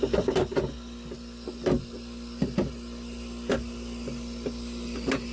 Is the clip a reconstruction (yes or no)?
no